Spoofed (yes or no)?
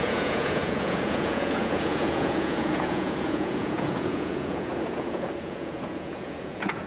yes